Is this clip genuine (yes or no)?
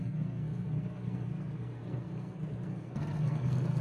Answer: no